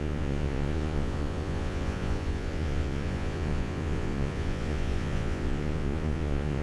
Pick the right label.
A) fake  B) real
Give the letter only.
A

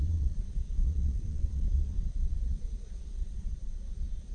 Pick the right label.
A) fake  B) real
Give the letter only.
A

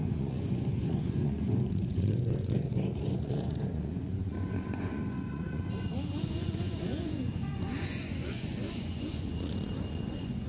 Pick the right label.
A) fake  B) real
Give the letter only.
A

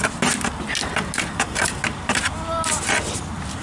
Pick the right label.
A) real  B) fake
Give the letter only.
A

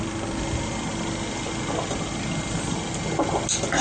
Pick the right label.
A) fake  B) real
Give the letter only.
B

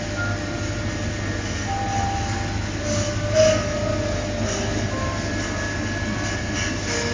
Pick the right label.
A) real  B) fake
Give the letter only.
A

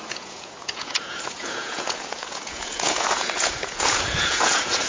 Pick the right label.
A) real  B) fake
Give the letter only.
B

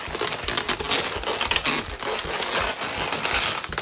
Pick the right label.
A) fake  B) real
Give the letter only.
B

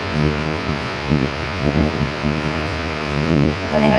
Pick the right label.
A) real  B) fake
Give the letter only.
B